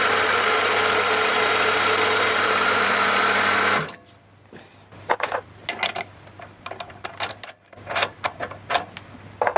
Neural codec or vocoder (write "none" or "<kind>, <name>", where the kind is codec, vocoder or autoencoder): none